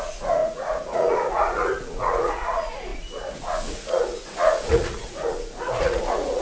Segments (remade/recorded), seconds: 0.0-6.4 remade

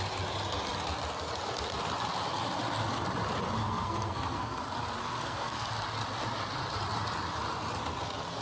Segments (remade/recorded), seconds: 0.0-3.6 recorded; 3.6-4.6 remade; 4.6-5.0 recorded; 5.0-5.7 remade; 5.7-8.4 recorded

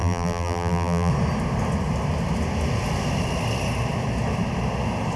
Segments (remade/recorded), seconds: 0.0-1.1 remade; 1.1-5.2 recorded

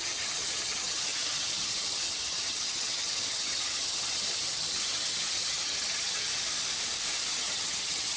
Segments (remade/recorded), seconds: 0.0-6.5 remade; 6.5-7.3 recorded; 7.3-8.2 remade